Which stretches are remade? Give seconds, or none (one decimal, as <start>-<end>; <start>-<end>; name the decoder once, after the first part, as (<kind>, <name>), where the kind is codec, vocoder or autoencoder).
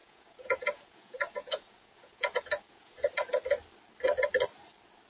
0.0-3.1 (vocoder, Vocos)